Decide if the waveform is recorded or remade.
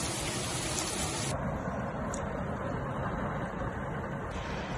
recorded